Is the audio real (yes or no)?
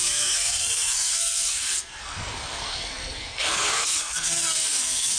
no